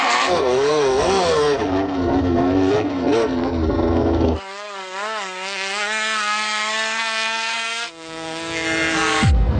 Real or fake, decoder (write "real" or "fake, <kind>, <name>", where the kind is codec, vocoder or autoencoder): fake, codec, SNAC